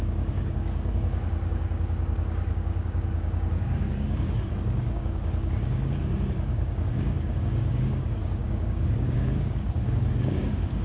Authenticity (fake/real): fake